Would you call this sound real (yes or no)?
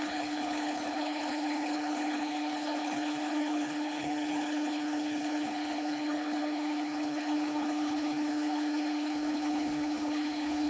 no